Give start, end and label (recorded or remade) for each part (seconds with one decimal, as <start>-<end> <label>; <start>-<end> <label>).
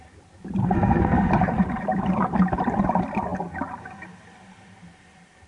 0.0-0.6 recorded; 0.6-1.3 remade; 1.3-5.5 recorded